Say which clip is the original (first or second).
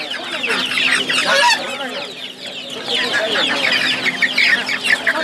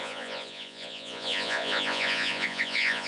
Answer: first